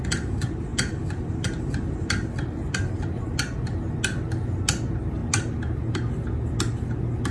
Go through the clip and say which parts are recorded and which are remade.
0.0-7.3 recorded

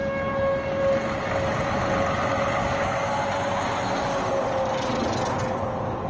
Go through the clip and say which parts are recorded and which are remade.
0.0-2.6 recorded; 2.6-3.2 remade; 3.2-6.1 recorded

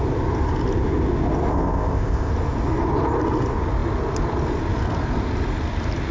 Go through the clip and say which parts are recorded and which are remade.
0.0-1.5 recorded; 1.5-2.3 remade; 2.3-6.1 recorded

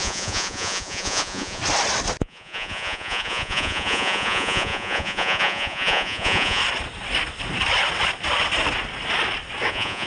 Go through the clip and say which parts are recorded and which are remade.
0.0-1.6 remade; 1.6-2.2 recorded; 2.2-6.6 remade; 6.6-9.7 recorded; 9.7-10.1 remade

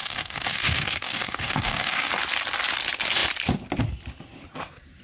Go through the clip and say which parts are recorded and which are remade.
0.0-2.1 remade; 2.1-5.0 recorded